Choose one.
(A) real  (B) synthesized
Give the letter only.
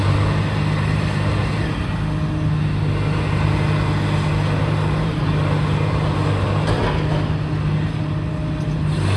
A